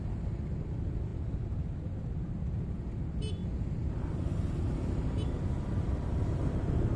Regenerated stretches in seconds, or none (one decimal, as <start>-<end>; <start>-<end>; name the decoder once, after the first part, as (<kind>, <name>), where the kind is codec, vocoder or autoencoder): none